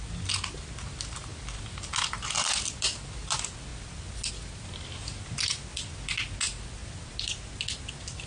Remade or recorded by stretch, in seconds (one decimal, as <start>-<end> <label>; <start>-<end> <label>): 0.0-8.3 recorded